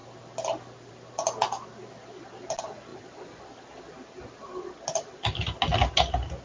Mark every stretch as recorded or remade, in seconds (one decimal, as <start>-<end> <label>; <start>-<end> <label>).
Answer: 0.0-2.9 recorded; 2.9-3.4 remade; 3.4-6.4 recorded